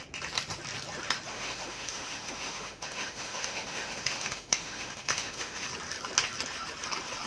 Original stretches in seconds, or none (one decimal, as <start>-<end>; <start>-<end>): 0.0-1.3; 5.7-7.3